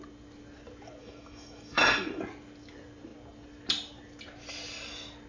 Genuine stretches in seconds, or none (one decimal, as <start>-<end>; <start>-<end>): 0.0-1.0; 2.2-5.3